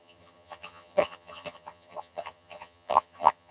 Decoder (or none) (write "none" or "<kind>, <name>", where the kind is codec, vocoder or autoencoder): vocoder, HiFi-GAN